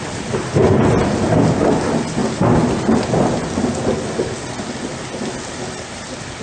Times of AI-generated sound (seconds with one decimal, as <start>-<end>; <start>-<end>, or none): none